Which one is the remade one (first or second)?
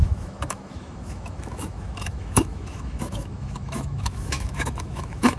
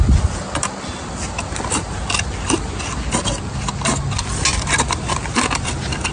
first